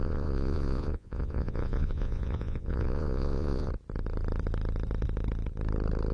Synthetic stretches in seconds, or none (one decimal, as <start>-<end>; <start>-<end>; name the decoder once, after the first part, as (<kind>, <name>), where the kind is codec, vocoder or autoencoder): 0.0-3.7 (vocoder, Vocos)